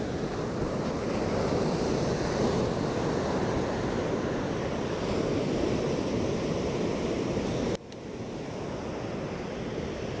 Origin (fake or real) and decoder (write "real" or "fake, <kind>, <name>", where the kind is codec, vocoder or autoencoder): real